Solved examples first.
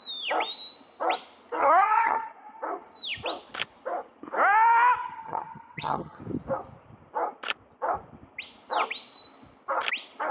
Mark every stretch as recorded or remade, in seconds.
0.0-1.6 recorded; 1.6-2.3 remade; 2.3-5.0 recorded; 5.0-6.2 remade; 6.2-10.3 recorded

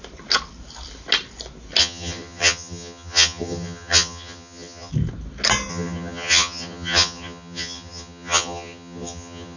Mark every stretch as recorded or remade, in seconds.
0.0-1.8 recorded; 1.8-4.9 remade; 4.9-5.7 recorded; 5.7-9.6 remade